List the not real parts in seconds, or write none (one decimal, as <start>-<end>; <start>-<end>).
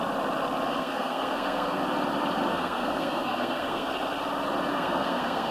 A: 0.7-1.8; 2.5-3.9; 4.7-5.5